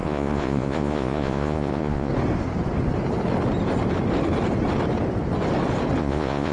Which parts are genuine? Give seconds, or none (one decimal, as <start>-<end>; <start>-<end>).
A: 2.1-6.0